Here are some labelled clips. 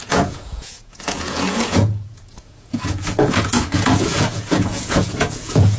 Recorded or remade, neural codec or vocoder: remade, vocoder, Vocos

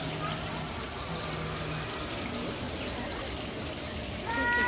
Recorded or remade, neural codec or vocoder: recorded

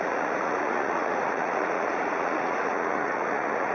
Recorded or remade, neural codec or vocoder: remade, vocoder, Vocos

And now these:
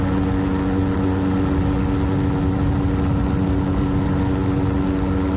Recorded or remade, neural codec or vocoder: recorded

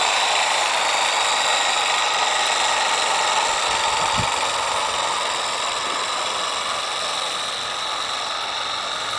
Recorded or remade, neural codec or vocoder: recorded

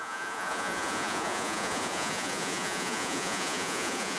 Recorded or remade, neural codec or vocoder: remade, vocoder, Vocos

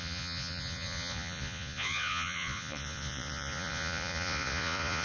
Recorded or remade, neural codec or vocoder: remade, vocoder, Vocos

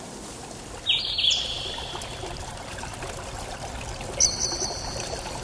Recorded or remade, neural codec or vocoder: recorded